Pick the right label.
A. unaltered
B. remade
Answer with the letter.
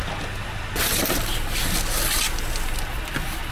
A